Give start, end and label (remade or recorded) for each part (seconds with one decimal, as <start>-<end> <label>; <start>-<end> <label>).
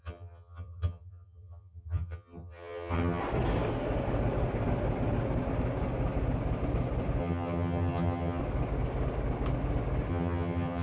0.0-3.2 remade; 3.2-7.2 recorded; 7.2-8.4 remade; 8.4-10.1 recorded; 10.1-10.8 remade